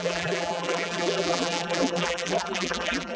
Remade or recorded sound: remade